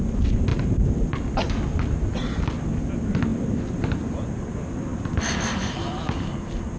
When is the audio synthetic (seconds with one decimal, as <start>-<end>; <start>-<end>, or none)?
3.3-4.3; 4.9-6.0